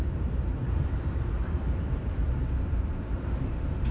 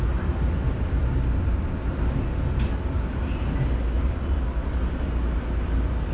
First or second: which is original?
second